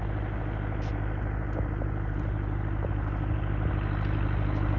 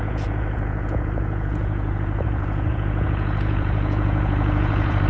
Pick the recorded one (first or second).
first